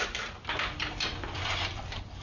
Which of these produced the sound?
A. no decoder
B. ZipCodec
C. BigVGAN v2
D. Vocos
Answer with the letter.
C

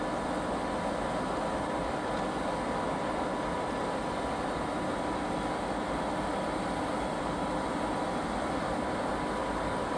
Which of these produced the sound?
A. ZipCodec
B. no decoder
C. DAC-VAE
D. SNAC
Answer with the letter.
B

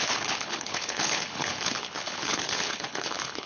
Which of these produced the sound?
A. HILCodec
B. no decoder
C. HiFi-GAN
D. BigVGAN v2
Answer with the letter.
A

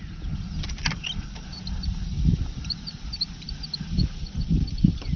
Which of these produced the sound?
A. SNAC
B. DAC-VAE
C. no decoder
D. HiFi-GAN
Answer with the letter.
C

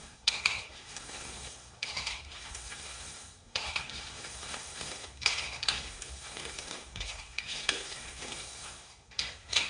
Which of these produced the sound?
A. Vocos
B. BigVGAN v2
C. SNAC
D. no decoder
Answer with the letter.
C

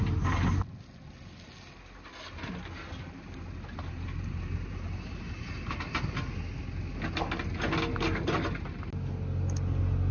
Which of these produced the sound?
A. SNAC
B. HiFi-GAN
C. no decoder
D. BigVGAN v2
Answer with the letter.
C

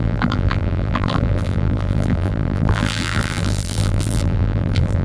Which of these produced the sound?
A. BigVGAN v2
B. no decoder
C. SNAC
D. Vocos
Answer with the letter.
A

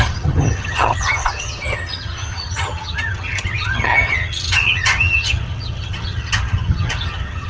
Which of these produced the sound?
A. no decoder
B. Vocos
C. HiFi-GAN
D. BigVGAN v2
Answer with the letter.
C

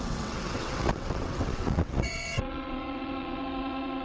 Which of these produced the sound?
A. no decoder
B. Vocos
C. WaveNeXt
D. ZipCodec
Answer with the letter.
C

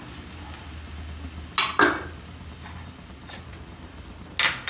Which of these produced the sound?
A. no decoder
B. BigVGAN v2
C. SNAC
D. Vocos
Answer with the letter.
A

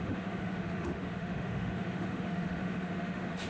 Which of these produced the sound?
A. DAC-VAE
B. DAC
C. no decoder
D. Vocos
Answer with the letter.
A